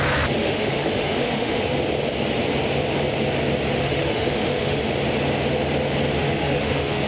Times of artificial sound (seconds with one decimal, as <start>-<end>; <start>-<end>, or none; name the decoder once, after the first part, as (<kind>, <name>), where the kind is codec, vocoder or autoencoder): 0.4-1.6 (autoencoder, DAC-VAE); 3.8-4.8; 6.2-7.1